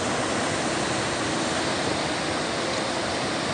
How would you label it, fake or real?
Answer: real